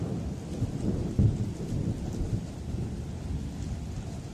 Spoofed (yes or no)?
no